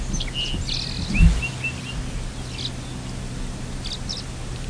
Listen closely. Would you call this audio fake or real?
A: real